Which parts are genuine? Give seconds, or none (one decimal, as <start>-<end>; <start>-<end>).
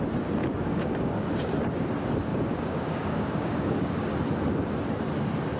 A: 0.0-0.4; 1.5-2.3; 4.1-5.6